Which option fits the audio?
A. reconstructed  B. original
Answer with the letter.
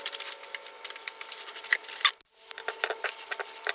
B